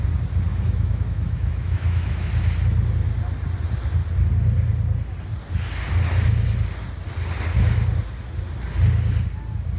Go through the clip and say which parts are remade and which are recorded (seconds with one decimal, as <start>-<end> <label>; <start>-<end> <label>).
0.0-0.5 recorded; 0.5-2.3 remade; 2.3-9.8 recorded